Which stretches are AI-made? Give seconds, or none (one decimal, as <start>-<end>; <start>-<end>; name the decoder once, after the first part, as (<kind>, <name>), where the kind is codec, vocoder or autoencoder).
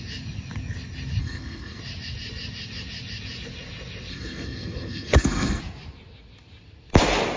1.2-1.8 (codec, SNAC); 4.1-5.6